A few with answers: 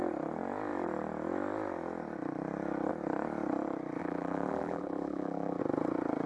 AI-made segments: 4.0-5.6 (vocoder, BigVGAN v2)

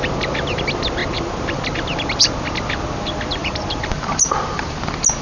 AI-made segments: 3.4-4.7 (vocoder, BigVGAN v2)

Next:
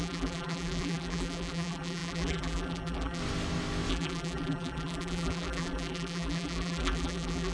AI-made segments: 0.0-3.2 (vocoder, BigVGAN v2); 3.9-7.5

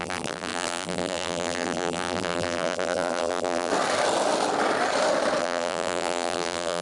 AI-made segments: 0.0-3.7 (vocoder, BigVGAN v2); 5.4-6.8

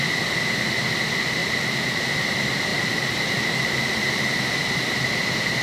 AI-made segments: 1.4-2.0 (vocoder, BigVGAN v2); 2.7-5.6

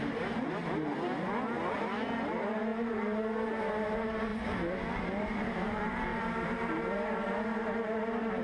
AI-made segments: 0.0-0.6 (vocoder, BigVGAN v2); 1.7-4.3; 5.2-8.4

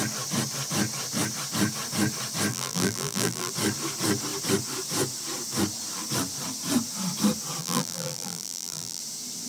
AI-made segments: 2.5-3.5 (vocoder, BigVGAN v2); 7.6-9.0